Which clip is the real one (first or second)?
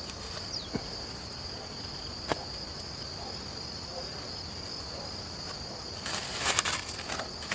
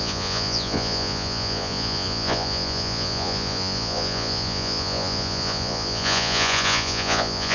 first